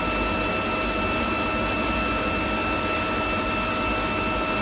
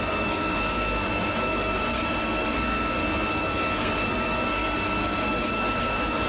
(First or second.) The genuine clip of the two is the first